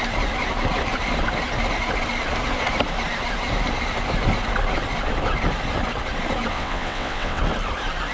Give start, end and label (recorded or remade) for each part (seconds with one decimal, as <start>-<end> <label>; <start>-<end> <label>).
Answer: 0.0-6.5 recorded; 6.5-7.4 remade; 7.4-8.1 recorded